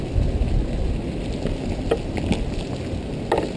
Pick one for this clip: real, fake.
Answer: real